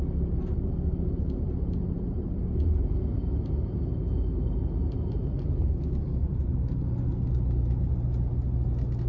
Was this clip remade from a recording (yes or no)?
no